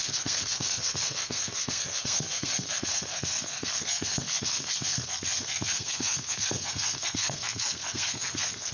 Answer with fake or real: fake